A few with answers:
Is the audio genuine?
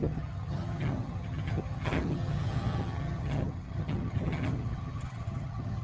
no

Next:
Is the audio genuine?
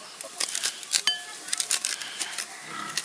yes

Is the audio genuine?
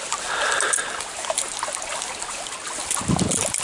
yes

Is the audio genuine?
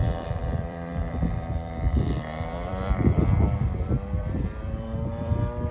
no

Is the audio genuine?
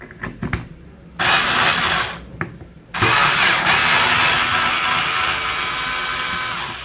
yes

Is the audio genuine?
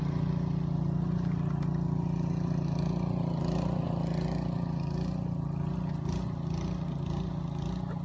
yes